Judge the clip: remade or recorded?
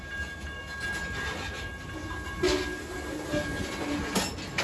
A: recorded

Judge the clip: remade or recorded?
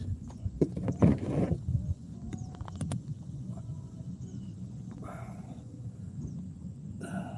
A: remade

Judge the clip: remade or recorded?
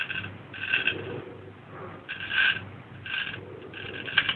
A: recorded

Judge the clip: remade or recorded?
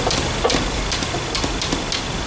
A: recorded